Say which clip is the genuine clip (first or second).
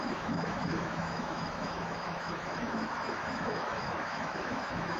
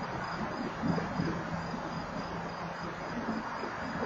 second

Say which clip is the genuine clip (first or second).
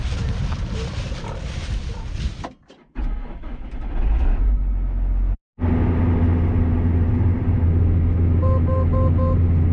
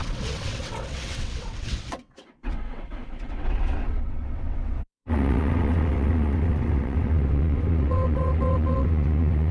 first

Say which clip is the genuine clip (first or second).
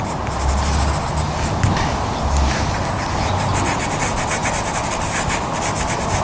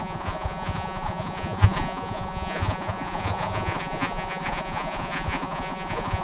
first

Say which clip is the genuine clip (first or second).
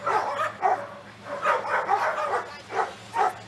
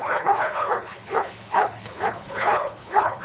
first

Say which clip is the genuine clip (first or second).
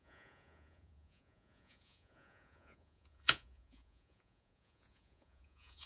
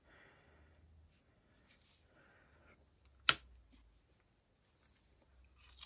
second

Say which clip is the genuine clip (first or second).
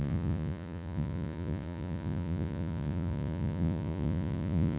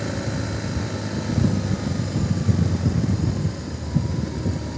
second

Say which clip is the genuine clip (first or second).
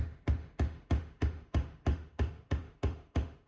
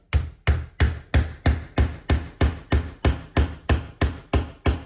second